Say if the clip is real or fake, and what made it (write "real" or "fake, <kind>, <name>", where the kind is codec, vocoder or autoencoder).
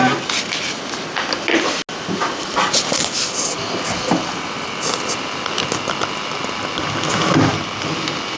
real